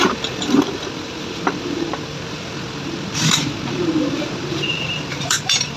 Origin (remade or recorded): remade